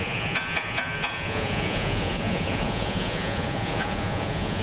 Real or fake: fake